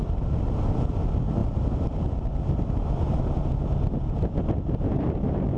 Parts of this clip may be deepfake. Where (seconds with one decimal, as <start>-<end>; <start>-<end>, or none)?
none